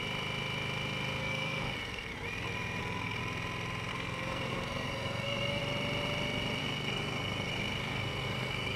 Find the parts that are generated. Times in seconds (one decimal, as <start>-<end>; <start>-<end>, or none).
1.2-2.1; 2.8-3.2; 3.9-5.6; 6.6-8.8